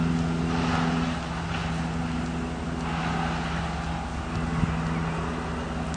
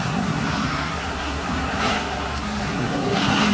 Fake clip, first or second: second